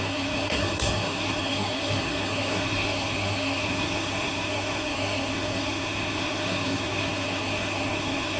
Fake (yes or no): yes